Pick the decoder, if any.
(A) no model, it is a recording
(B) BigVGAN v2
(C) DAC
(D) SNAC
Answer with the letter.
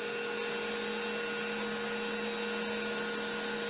A